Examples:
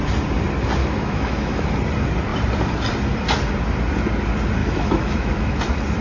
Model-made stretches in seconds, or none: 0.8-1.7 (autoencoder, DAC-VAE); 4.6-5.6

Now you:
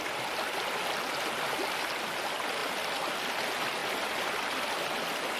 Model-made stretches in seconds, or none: 2.6-3.3 (vocoder, BigVGAN v2)